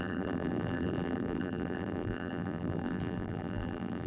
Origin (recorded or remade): remade